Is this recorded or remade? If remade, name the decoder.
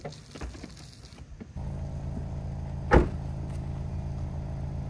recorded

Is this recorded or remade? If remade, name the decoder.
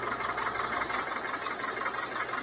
recorded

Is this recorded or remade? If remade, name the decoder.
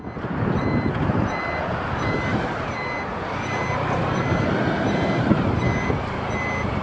recorded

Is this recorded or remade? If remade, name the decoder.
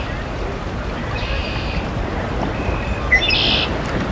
recorded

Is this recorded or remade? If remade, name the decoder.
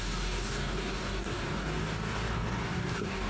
remade, codec, DAC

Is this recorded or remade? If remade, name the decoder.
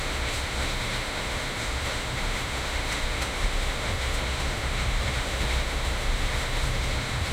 remade, autoencoder, DAC-VAE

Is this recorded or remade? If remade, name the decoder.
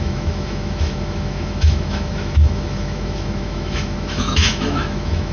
remade, autoencoder, DAC-VAE